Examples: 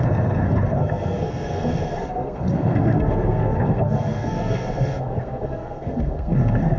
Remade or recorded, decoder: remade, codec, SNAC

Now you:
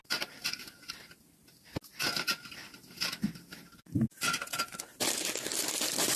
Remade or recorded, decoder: recorded